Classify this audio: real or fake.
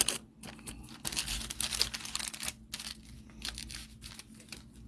real